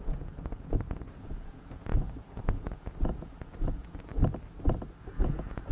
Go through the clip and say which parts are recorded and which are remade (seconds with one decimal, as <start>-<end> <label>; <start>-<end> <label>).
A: 0.0-4.1 remade; 4.1-5.0 recorded; 5.0-5.7 remade